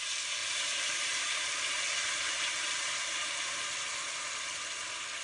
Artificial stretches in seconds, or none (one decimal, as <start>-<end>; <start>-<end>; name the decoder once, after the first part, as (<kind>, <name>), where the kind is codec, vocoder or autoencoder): 0.4-3.5 (vocoder, BigVGAN v2)